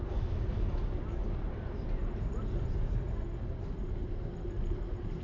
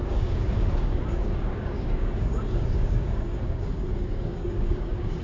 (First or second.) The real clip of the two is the first